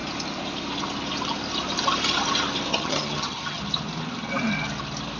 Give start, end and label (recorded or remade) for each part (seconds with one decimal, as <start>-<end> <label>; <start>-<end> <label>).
0.0-2.7 recorded; 2.7-3.6 remade; 3.6-5.2 recorded

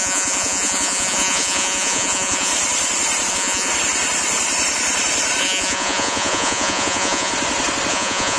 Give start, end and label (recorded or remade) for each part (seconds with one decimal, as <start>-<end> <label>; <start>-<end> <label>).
0.0-2.5 remade; 2.5-3.3 recorded; 3.3-3.7 remade; 3.7-5.4 recorded; 5.4-7.3 remade; 7.3-7.9 recorded; 7.9-8.4 remade